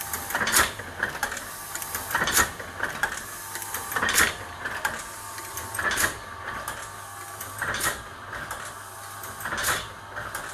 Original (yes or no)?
yes